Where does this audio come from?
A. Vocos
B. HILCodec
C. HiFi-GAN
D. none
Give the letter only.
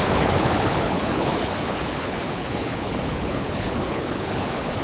B